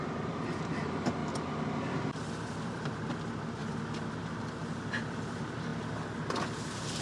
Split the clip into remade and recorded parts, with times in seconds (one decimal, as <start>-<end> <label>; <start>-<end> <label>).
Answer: 0.0-1.2 remade; 1.2-2.3 recorded; 2.3-3.6 remade; 3.6-4.4 recorded; 4.4-5.7 remade; 5.7-7.0 recorded